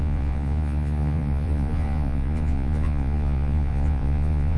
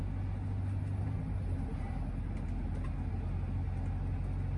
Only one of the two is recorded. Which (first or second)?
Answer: second